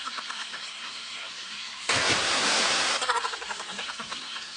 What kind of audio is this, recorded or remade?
remade